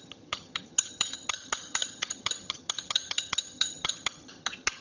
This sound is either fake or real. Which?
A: fake